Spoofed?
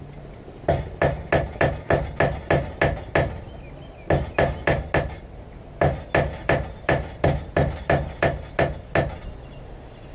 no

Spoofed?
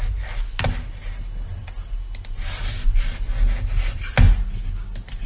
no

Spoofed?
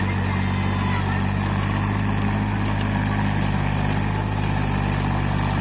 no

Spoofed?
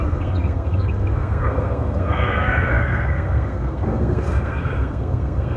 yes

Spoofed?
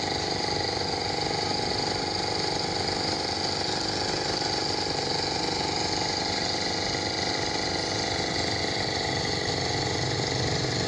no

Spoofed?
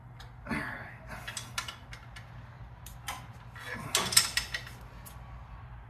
no